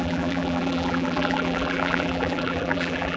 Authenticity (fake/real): fake